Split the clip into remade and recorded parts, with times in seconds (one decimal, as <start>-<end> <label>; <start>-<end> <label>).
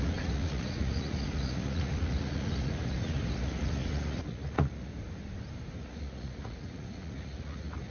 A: 0.0-4.9 remade; 4.9-5.8 recorded; 5.8-7.9 remade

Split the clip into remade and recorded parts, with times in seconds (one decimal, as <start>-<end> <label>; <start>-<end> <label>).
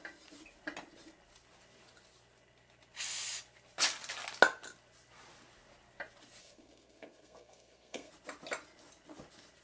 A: 0.0-6.4 recorded; 6.4-8.1 remade; 8.1-9.6 recorded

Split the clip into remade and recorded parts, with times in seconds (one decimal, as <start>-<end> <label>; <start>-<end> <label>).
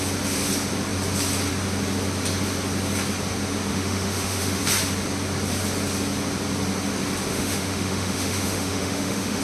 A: 0.0-3.7 recorded; 3.7-4.6 remade; 4.6-7.3 recorded; 7.3-9.4 remade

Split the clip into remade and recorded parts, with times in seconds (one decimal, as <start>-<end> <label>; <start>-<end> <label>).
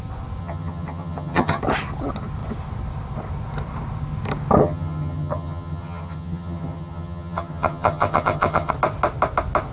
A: 0.0-0.4 recorded; 0.4-1.6 remade; 1.6-4.6 recorded; 4.6-8.7 remade; 8.7-9.7 recorded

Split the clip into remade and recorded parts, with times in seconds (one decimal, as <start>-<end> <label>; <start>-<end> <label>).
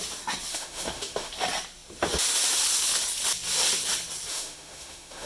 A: 0.0-0.5 recorded; 0.5-1.3 remade; 1.3-4.3 recorded; 4.3-5.3 remade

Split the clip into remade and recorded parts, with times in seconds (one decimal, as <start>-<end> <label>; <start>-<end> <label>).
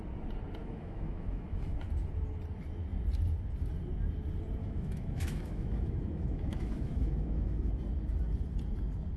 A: 0.0-0.6 recorded; 0.6-1.8 remade; 1.8-4.6 recorded; 4.6-7.7 remade; 7.7-9.2 recorded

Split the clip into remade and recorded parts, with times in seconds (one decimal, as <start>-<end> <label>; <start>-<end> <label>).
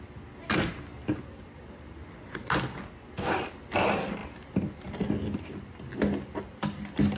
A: 0.0-7.2 recorded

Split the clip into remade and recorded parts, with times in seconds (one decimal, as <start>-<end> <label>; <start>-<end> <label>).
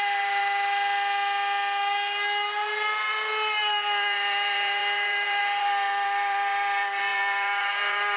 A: 0.0-0.4 remade; 0.4-3.1 recorded; 3.1-8.2 remade